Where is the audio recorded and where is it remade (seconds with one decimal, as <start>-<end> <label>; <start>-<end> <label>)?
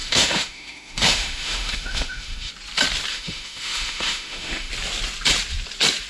0.0-2.5 remade; 2.5-3.1 recorded; 3.1-4.7 remade; 4.7-6.1 recorded